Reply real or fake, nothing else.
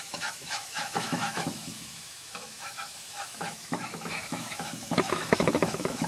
fake